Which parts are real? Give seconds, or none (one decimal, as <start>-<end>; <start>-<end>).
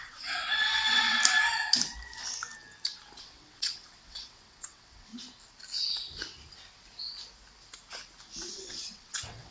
1.2-3.2; 5.1-8.5